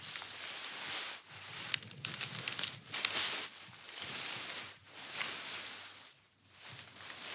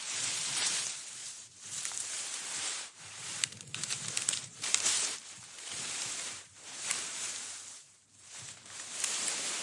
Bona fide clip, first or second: first